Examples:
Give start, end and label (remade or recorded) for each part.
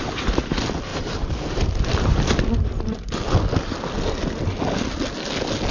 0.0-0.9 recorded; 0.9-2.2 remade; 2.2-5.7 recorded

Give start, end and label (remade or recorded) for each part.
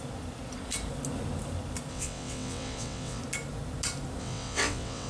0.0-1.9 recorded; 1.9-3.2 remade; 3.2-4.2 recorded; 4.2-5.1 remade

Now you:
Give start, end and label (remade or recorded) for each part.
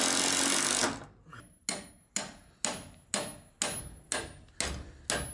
0.0-5.3 recorded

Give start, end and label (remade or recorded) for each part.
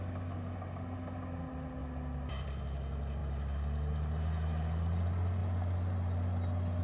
0.0-1.8 recorded; 1.8-2.6 remade; 2.6-6.8 recorded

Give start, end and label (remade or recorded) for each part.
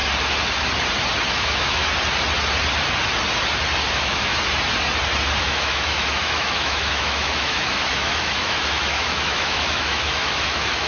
0.0-1.3 recorded; 1.3-1.8 remade; 1.8-3.9 recorded; 3.9-4.3 remade; 4.3-5.4 recorded; 5.4-10.9 remade